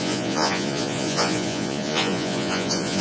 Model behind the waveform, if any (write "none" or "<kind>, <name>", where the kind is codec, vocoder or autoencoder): vocoder, Vocos